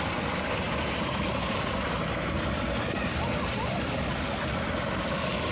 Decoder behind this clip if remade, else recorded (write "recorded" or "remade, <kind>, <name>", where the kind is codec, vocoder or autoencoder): recorded